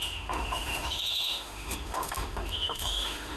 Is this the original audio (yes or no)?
no